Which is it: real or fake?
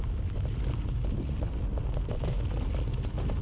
real